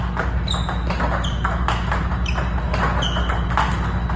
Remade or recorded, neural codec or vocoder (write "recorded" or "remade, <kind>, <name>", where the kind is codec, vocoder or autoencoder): recorded